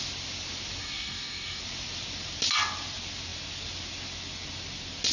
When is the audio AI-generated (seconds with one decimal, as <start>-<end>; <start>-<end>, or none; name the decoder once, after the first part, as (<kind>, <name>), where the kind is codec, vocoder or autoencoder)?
0.8-1.6 (codec, DAC)